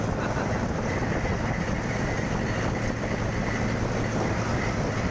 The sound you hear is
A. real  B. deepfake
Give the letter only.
A